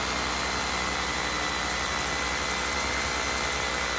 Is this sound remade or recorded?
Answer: recorded